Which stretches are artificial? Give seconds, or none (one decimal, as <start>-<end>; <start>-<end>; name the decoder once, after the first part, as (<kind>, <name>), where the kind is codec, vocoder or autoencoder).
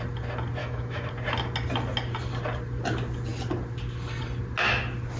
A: 0.6-1.1 (autoencoder, DAC-VAE)